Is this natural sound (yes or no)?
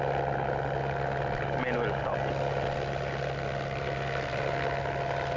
yes